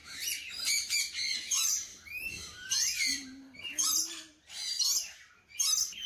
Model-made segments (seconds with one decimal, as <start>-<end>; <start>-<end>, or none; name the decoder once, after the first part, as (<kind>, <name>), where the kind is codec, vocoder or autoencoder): 0.0-1.1 (vocoder, BigVGAN v2)